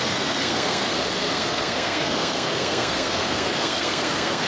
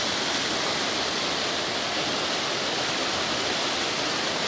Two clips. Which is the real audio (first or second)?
second